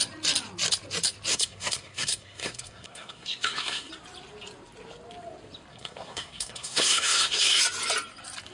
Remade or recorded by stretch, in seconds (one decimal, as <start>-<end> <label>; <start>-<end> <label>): 0.0-1.3 recorded; 1.3-3.9 remade; 3.9-5.7 recorded; 5.7-7.6 remade; 7.6-8.5 recorded